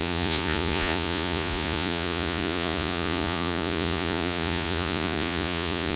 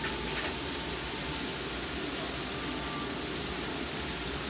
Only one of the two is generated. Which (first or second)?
first